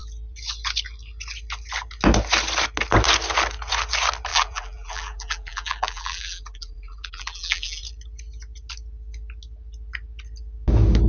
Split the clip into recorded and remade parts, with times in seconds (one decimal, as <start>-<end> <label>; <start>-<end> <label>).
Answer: 0.0-4.3 recorded; 4.3-7.8 remade; 7.8-11.1 recorded